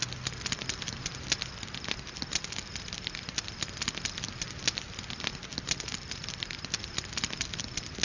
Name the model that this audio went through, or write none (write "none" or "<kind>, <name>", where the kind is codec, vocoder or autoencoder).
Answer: none